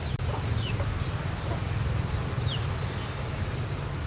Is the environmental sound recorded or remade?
recorded